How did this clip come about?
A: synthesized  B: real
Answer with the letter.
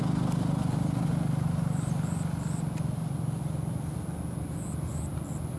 B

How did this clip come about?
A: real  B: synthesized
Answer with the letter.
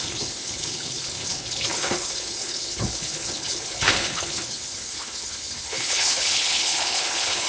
B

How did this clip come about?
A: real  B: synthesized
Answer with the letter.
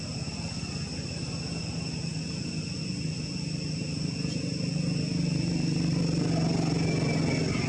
A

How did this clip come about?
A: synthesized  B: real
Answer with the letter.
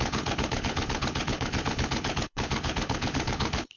A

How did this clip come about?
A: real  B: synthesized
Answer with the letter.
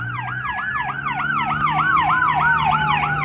A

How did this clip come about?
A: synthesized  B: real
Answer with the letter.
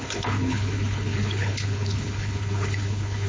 A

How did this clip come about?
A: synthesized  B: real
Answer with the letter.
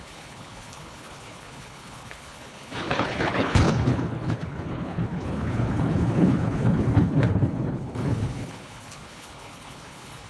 A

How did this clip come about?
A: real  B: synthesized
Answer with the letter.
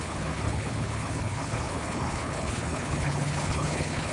B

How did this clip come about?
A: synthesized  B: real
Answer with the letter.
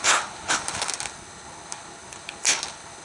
A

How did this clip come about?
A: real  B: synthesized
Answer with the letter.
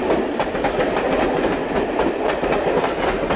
A